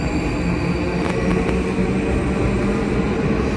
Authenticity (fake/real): real